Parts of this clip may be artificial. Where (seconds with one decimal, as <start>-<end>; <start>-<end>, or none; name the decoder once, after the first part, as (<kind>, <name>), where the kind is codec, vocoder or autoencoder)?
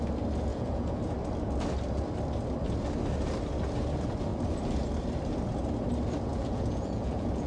0.5-1.0 (vocoder, Vocos); 6.3-7.5